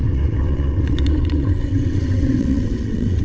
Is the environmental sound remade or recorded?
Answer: remade